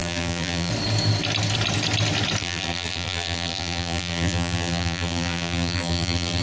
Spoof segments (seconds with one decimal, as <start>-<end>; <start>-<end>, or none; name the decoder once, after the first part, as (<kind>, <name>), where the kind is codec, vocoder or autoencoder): 0.0-0.7 (vocoder, BigVGAN v2); 2.4-6.4